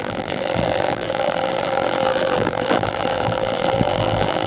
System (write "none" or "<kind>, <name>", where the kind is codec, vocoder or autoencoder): vocoder, BigVGAN v2